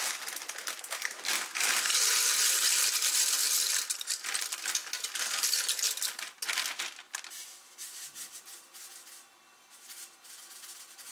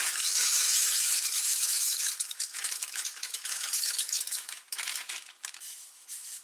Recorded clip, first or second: first